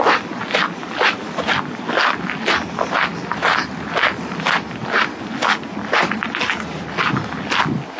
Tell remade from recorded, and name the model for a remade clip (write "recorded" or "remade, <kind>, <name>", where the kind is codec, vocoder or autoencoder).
recorded